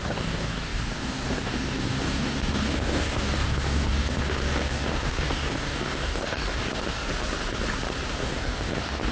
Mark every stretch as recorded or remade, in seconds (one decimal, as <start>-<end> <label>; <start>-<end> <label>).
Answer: 0.0-7.1 remade; 7.1-8.2 recorded; 8.2-9.1 remade